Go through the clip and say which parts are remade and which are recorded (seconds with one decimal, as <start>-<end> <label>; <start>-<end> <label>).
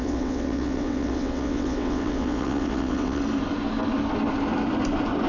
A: 0.0-3.2 remade; 3.2-5.3 recorded